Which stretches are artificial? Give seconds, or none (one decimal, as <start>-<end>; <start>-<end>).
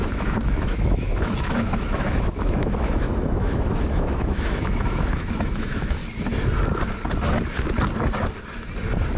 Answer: 0.0-6.0